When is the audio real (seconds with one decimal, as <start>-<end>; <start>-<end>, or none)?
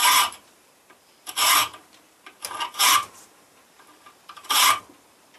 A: 1.1-1.6; 4.8-5.4